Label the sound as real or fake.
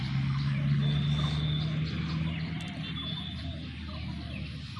real